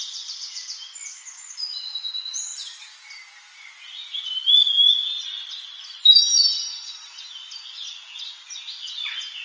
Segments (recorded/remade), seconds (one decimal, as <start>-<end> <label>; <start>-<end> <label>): 0.0-9.4 recorded